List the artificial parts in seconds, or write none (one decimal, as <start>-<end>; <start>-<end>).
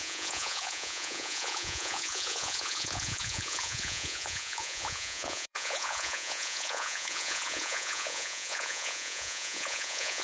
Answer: 0.0-10.2